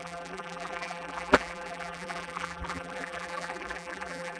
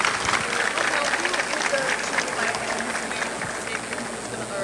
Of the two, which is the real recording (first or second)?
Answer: second